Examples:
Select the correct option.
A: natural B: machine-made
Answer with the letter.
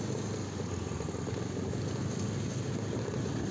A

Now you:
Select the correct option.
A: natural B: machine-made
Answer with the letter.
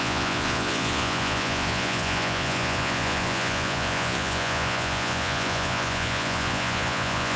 B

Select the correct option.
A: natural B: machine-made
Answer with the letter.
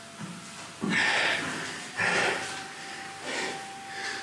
A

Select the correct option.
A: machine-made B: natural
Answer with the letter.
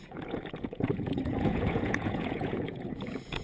A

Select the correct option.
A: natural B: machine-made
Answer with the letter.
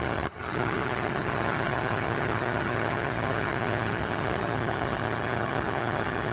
B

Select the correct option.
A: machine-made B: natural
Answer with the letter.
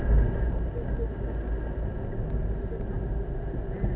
B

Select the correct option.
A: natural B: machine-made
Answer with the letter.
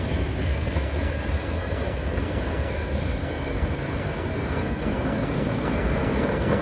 B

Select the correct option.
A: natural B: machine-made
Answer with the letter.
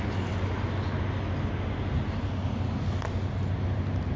A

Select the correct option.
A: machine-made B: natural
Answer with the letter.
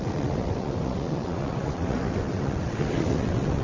A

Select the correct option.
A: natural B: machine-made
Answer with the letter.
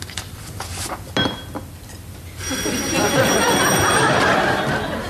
A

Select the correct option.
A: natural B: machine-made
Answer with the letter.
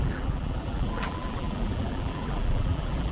B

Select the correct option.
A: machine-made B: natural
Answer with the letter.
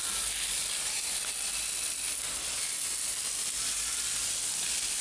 B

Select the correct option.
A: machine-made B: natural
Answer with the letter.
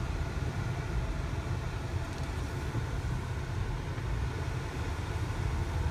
B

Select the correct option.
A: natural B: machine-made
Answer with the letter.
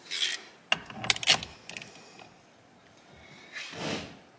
A